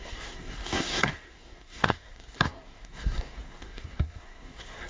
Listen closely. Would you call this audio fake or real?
fake